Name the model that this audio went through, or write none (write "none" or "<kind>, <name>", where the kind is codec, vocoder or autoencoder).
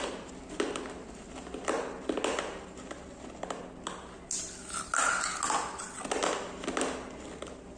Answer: none